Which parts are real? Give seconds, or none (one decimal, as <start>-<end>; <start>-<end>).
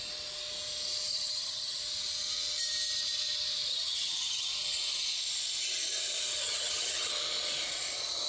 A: 0.0-1.1; 1.8-3.7; 4.5-6.3; 7.1-8.3